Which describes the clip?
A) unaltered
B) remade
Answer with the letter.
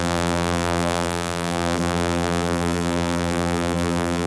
B